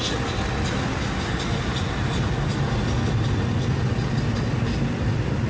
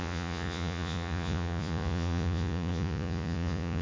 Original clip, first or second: first